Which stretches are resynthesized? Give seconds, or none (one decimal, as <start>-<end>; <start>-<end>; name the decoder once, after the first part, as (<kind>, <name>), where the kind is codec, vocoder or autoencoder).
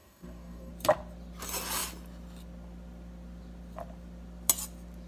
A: 0.0-0.7 (codec, DAC)